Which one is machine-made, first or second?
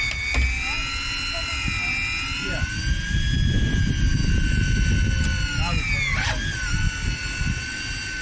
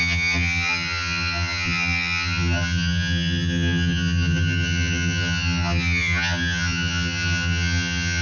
second